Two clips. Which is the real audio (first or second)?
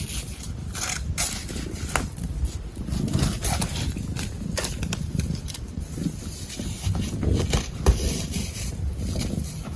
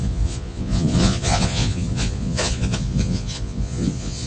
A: first